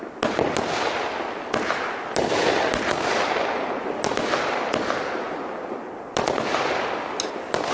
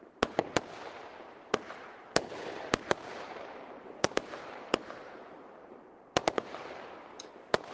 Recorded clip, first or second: first